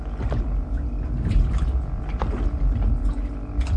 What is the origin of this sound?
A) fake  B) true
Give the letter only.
B